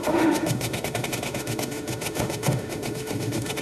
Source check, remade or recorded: remade